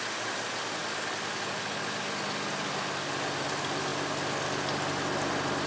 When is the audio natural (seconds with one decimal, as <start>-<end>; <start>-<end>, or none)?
0.0-0.8; 1.8-5.7